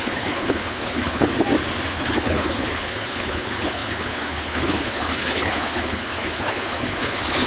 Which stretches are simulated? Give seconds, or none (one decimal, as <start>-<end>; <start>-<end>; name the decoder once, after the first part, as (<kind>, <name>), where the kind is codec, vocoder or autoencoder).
0.0-1.3 (codec, HILCodec); 1.9-7.5